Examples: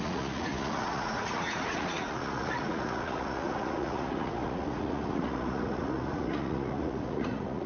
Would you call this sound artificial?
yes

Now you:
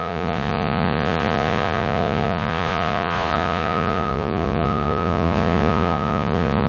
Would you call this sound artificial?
yes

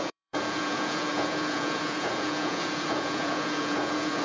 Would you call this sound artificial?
yes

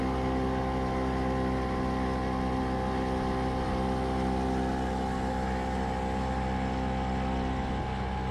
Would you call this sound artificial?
no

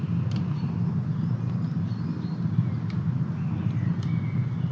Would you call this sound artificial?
no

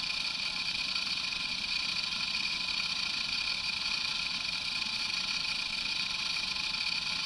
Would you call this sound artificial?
yes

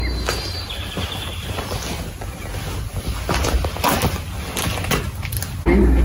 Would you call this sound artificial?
no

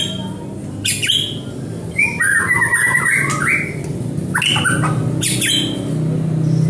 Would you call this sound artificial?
no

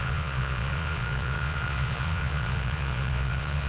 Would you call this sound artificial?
yes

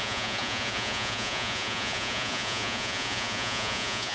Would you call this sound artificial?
yes